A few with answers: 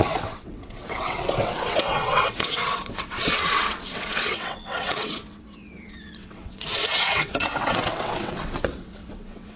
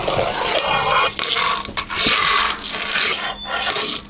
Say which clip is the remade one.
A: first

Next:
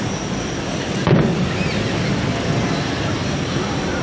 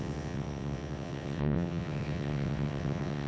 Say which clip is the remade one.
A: second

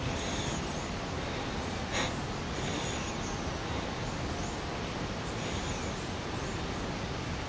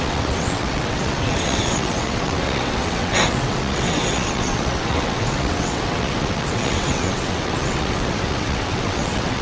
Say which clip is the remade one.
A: second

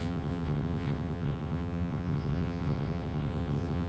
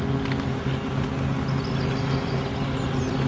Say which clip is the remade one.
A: first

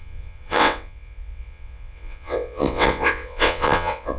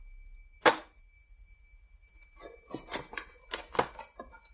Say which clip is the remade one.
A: first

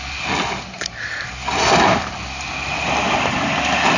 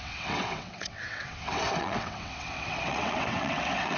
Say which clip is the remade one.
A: second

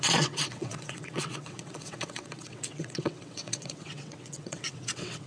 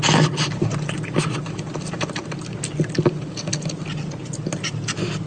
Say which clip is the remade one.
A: first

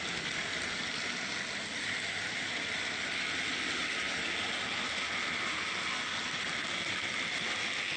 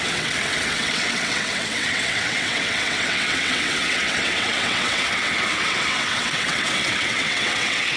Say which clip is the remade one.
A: second